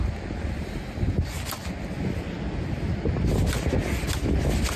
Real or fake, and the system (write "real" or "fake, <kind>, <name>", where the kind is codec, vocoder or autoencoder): real